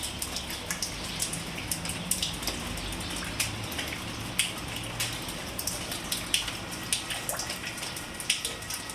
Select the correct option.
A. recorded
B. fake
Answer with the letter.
A